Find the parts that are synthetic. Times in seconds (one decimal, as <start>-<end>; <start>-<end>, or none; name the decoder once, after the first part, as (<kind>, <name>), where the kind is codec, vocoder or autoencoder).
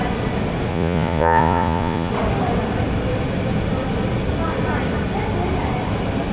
0.7-2.1 (vocoder, Vocos)